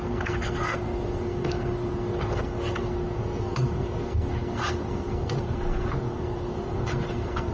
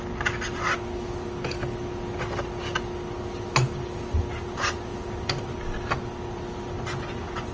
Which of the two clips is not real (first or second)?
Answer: first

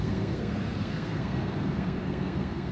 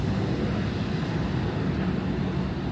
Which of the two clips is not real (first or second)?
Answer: first